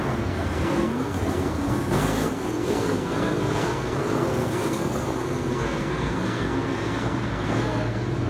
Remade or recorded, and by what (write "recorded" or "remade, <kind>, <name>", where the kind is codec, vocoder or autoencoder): remade, codec, SNAC